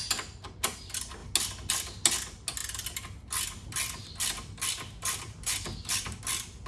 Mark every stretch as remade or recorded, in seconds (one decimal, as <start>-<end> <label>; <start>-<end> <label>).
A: 0.0-6.7 recorded